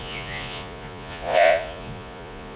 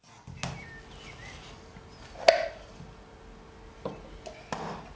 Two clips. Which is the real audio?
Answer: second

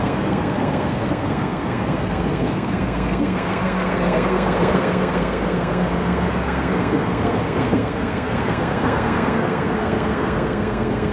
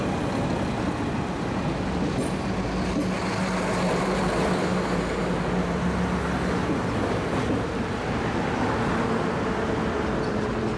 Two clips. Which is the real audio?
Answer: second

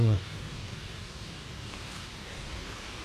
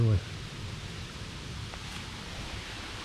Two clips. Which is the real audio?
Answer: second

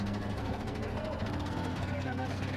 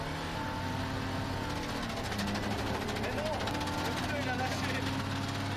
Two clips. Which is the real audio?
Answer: second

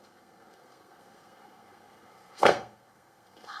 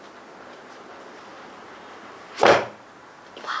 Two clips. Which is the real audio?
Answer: second